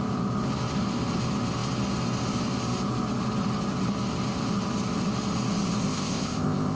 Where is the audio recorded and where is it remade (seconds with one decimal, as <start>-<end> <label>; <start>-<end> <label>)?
0.0-5.8 recorded; 5.8-6.8 remade